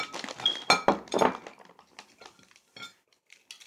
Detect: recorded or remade recorded